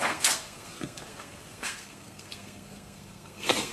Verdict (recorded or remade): remade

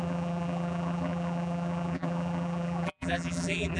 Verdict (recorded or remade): remade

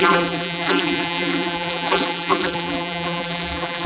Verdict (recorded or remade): remade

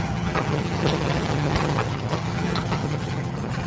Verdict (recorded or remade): remade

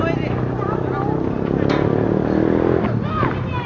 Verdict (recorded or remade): recorded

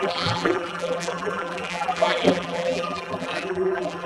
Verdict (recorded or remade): remade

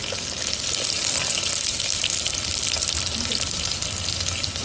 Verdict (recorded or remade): recorded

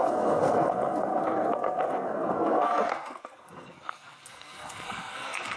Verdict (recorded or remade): remade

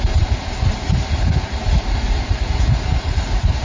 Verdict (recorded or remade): remade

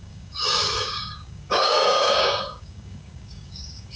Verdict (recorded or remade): remade